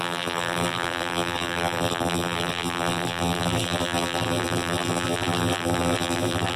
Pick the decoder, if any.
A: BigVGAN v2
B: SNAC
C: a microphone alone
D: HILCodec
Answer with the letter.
A